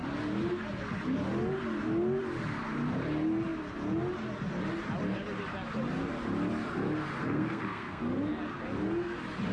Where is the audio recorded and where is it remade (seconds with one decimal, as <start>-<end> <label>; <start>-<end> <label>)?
0.0-7.2 recorded; 7.2-8.0 remade; 8.0-9.5 recorded